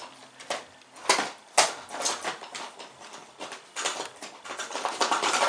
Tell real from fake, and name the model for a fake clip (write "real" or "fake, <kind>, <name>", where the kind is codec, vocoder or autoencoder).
real